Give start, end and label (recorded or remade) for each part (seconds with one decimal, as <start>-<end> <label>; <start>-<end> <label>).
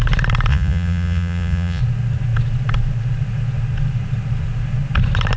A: 0.0-0.5 recorded; 0.5-1.8 remade; 1.8-5.4 recorded